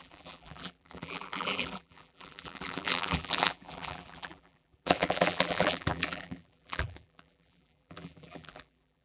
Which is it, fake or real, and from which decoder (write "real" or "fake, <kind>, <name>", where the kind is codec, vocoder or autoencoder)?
fake, vocoder, BigVGAN v2